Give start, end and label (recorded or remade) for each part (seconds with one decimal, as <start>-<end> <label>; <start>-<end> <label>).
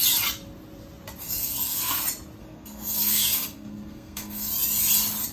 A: 0.0-1.2 recorded; 1.2-2.0 remade; 2.0-2.4 recorded; 2.4-4.5 remade; 4.5-5.3 recorded